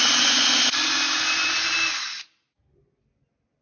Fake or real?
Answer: real